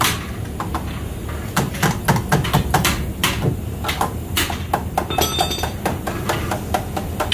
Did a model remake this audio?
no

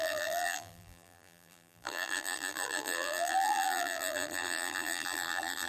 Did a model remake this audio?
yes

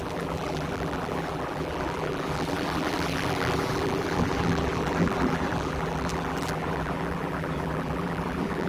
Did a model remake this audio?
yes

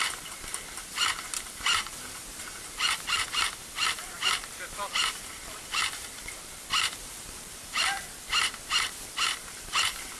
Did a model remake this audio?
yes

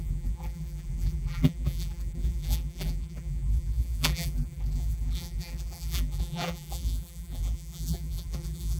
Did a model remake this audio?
yes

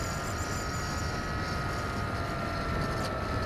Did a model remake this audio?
no